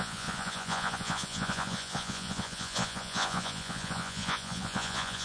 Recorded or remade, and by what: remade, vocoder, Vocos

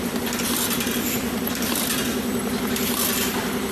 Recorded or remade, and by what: recorded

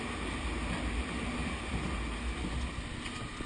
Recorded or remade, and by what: recorded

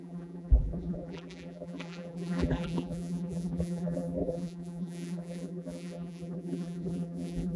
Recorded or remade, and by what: remade, vocoder, BigVGAN v2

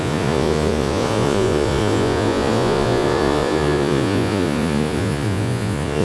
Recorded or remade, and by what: remade, vocoder, Vocos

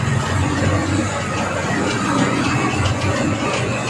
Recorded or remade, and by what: remade, vocoder, Vocos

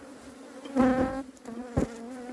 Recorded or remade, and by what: recorded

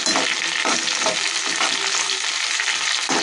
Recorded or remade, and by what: recorded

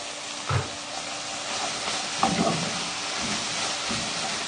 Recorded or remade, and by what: recorded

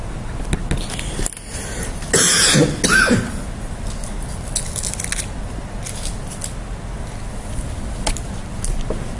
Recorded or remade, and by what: recorded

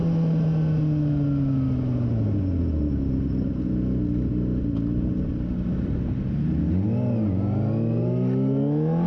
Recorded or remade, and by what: recorded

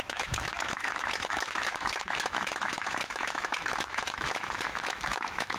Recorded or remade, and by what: remade, autoencoder, DAC-VAE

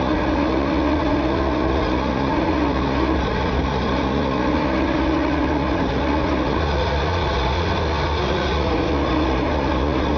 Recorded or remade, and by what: remade, vocoder, Vocos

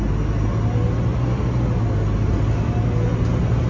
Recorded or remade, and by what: recorded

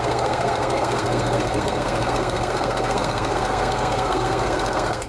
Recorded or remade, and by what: remade, codec, SNAC